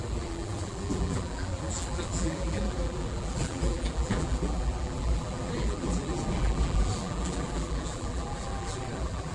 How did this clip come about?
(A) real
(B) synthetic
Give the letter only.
B